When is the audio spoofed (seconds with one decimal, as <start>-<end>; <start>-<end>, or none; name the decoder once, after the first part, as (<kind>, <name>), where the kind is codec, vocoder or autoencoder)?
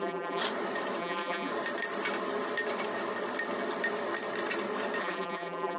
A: 0.0-0.4 (vocoder, BigVGAN v2); 1.0-1.5; 5.0-5.8